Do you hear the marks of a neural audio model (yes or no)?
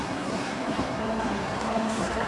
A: yes